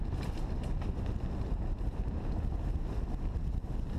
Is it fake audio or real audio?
real